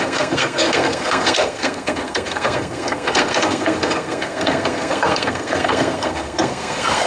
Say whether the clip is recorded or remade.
remade